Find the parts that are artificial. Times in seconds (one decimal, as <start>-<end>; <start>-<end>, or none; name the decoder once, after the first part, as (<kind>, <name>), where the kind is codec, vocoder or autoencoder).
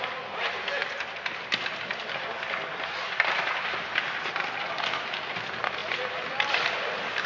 none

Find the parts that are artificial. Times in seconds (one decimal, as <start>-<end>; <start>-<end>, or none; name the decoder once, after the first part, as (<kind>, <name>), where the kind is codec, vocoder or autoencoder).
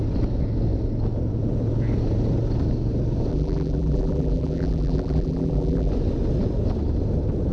3.3-5.9 (vocoder, BigVGAN v2)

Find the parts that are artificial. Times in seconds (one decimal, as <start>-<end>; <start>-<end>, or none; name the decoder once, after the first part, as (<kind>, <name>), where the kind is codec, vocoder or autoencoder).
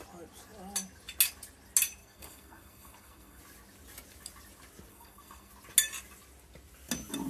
2.0-3.4 (codec, SNAC); 4.9-5.5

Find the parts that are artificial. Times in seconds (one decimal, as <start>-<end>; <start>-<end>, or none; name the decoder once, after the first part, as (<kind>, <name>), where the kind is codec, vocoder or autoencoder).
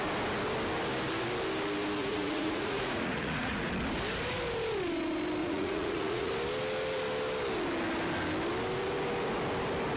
2.0-3.7 (vocoder, Vocos); 5.4-6.3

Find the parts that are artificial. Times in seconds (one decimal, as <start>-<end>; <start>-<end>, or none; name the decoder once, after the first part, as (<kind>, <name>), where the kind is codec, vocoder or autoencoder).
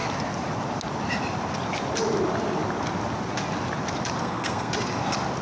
4.2-4.7 (codec, SNAC)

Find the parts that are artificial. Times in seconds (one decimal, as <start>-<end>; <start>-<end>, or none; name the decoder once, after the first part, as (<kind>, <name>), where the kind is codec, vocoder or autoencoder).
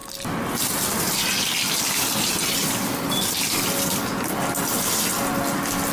2.6-3.2 (vocoder, BigVGAN v2)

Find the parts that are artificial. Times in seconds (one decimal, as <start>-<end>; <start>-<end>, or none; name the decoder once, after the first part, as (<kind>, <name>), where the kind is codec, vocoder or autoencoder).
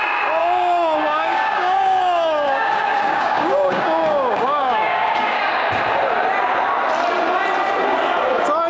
0.4-5.4 (codec, DAC)